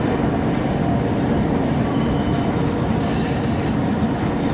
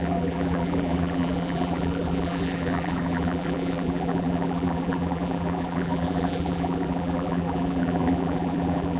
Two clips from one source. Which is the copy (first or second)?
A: second